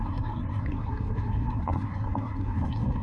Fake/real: fake